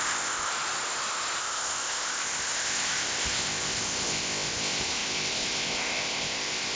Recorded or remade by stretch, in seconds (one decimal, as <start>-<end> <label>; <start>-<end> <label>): 0.0-0.5 remade; 0.5-1.4 recorded; 1.4-6.8 remade